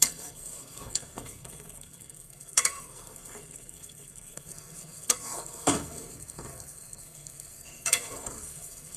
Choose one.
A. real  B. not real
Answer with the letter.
B